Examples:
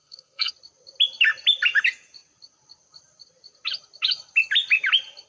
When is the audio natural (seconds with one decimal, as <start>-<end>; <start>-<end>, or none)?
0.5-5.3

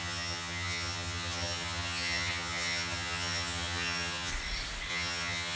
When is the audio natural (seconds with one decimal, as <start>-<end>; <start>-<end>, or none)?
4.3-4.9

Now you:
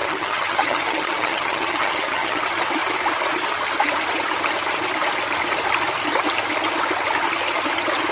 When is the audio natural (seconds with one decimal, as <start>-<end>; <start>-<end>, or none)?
2.4-8.1

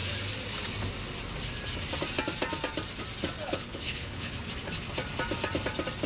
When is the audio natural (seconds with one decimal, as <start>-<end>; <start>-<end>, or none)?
0.0-3.4; 4.4-6.1

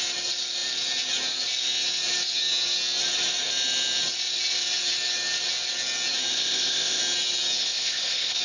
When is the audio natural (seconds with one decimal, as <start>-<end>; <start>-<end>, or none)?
0.0-6.3; 7.0-7.6

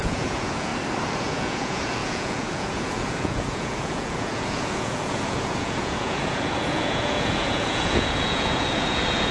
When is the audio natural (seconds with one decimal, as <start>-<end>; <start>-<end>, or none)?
0.7-1.2